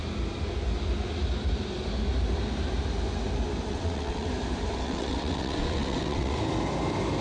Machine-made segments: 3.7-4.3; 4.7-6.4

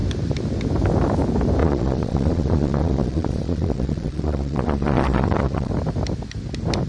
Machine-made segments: 1.6-5.7

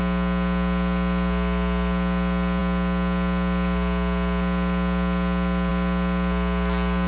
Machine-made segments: none

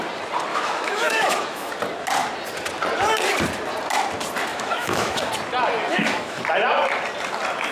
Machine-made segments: 0.5-1.7; 4.5-5.3; 5.9-6.4

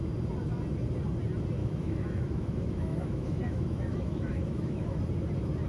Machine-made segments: 1.6-5.0

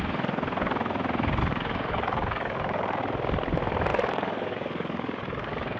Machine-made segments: 1.4-3.0; 3.9-5.8

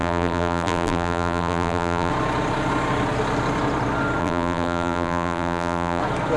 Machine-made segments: 0.0-2.1; 4.2-6.0